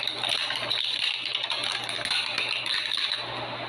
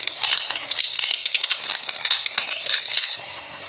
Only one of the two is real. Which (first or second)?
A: first